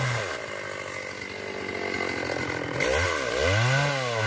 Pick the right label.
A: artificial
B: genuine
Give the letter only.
B